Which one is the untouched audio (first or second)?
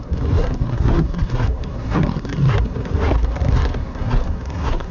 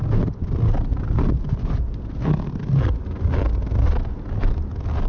second